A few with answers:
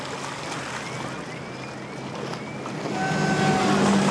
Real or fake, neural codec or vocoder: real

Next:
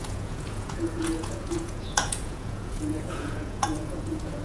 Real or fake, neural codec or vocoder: fake, vocoder, Vocos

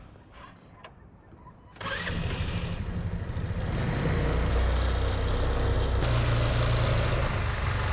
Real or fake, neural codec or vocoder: real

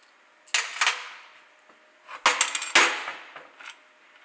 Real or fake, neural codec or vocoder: real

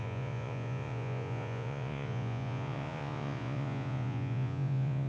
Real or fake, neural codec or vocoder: fake, vocoder, Vocos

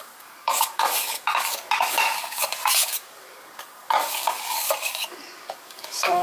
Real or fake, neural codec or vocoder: fake, codec, DAC